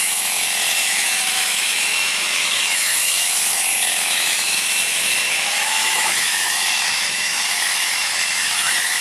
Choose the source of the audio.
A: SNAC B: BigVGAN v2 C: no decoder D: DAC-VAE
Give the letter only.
D